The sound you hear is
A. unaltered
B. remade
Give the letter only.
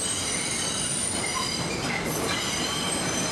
B